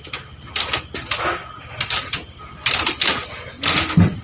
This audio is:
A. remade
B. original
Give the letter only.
B